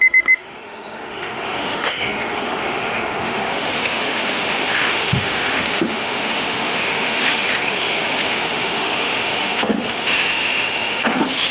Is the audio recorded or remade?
remade